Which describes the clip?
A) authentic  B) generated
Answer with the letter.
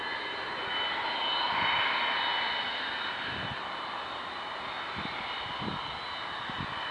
A